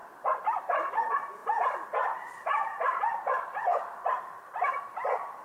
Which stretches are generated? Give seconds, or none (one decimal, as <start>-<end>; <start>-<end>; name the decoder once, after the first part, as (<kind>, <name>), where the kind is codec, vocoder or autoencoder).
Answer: 1.4-4.6 (vocoder, BigVGAN v2)